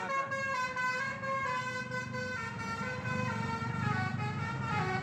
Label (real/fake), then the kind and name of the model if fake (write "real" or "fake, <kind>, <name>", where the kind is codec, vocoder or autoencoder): real